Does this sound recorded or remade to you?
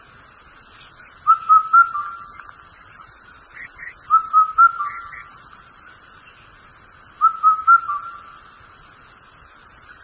recorded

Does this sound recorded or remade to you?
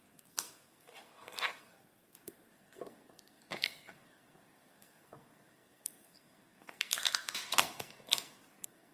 remade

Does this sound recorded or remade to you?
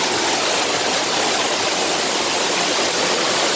recorded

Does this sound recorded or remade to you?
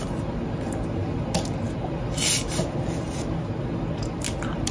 recorded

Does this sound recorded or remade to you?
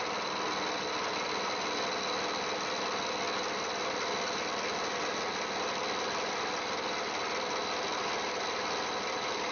recorded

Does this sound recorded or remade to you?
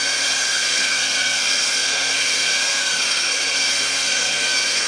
remade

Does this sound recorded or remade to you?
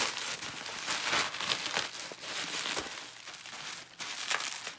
recorded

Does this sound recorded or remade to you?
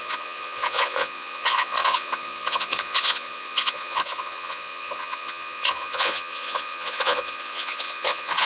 remade